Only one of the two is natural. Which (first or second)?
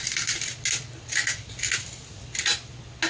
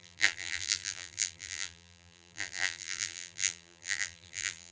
first